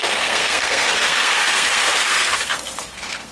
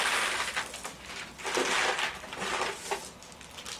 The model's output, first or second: first